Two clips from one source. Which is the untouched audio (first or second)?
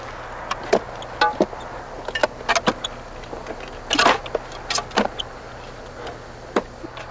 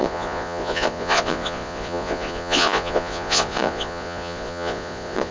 first